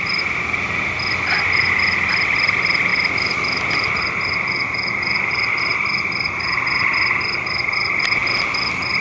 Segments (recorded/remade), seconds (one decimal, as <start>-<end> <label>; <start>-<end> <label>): 0.0-9.0 recorded